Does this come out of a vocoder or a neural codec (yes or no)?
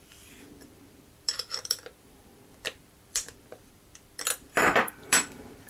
yes